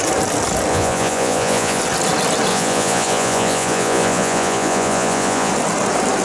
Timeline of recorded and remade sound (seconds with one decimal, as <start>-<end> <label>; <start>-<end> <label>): 0.0-0.7 recorded; 0.7-1.8 remade; 1.8-2.5 recorded; 2.5-5.5 remade; 5.5-6.2 recorded

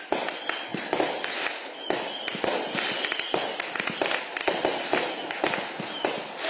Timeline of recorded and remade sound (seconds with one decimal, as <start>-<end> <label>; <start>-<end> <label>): 0.0-6.5 recorded

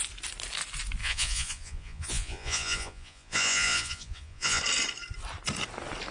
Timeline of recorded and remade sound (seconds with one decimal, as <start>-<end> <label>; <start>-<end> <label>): 0.0-1.0 recorded; 1.0-4.6 remade; 4.6-6.1 recorded

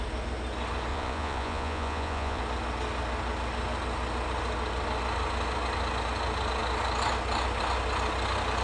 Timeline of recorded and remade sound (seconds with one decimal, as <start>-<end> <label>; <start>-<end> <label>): 0.0-0.9 recorded; 0.9-2.4 remade; 2.4-8.6 recorded

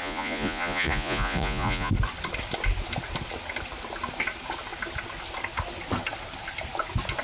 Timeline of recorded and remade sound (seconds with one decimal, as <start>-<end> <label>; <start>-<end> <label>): 0.0-1.9 remade; 1.9-7.2 recorded